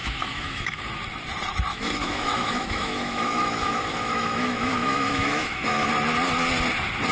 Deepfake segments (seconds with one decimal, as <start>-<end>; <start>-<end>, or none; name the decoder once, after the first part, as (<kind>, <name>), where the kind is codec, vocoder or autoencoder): 0.0-0.8 (autoencoder, DAC-VAE); 1.7-5.9